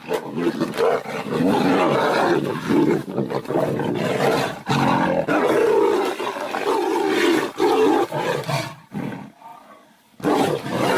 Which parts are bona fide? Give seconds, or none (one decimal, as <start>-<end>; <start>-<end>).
0.0-11.0